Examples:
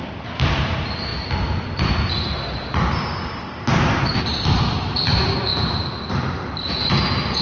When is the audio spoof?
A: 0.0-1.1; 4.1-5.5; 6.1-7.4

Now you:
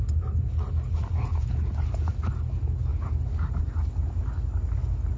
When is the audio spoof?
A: none

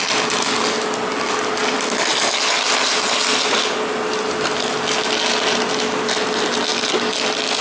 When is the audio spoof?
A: none

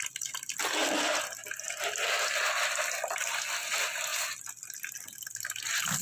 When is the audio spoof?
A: none

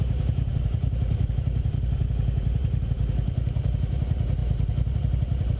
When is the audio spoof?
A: 0.0-5.6

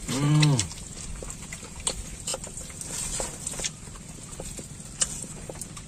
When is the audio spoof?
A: none

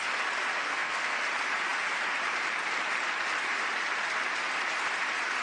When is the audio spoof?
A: 0.7-1.2

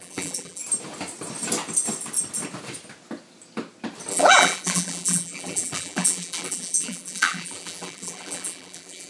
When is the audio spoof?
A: 0.0-0.6; 4.1-9.1